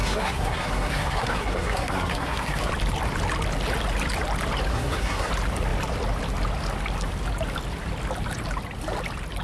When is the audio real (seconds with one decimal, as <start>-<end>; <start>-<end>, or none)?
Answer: 2.7-4.7; 5.3-9.4